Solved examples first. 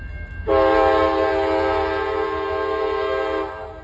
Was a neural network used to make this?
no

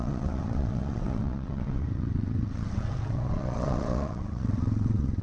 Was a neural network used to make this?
yes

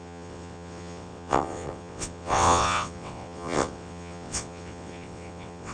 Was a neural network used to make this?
yes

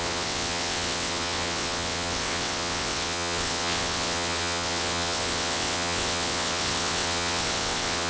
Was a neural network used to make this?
yes